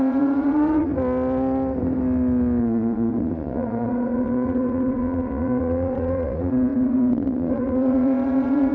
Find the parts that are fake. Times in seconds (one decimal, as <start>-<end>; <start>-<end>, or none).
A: 0.0-0.9; 2.6-8.7